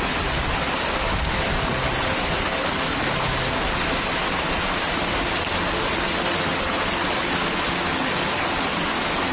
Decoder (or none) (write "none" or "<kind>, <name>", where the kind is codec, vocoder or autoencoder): none